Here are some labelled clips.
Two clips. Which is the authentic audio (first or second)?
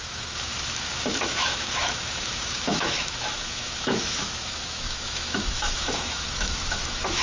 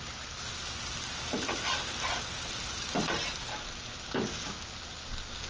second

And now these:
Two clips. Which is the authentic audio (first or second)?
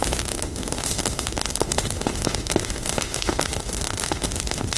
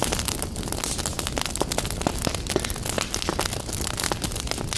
second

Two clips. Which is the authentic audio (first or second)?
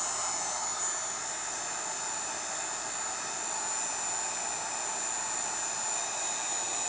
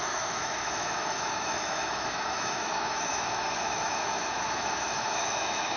first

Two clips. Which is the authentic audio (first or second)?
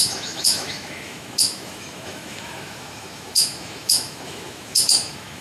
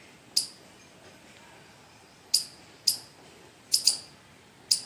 second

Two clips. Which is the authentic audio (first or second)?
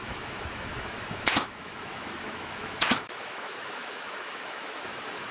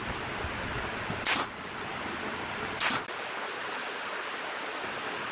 second